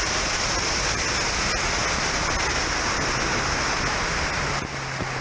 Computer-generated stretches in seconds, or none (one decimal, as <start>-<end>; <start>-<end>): none